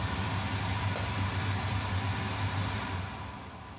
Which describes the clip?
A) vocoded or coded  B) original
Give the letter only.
B